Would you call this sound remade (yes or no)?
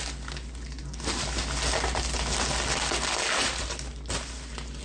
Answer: no